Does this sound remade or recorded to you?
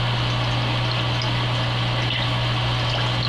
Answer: recorded